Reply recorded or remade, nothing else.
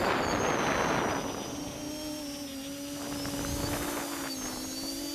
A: recorded